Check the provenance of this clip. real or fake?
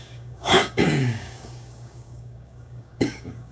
fake